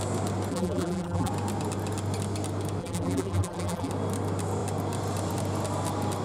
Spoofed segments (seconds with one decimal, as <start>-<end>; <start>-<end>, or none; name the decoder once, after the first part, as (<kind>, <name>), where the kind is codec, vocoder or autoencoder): 0.5-1.3 (vocoder, BigVGAN v2); 2.8-3.9